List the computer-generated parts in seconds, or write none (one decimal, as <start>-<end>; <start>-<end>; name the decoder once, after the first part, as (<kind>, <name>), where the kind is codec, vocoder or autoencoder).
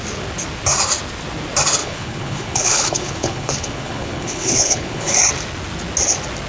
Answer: 1.8-5.2 (codec, HILCodec)